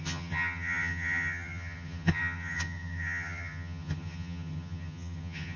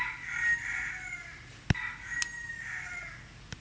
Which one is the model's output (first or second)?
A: first